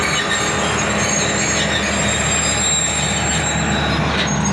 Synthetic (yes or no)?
no